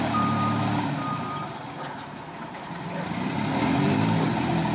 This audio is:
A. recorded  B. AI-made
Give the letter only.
A